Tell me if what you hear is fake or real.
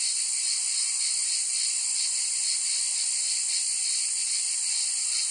real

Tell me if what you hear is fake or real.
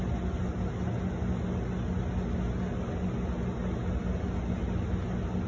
real